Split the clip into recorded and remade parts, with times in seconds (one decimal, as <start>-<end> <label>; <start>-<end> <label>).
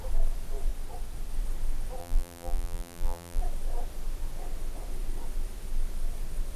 0.0-2.0 recorded; 2.0-3.4 remade; 3.4-6.6 recorded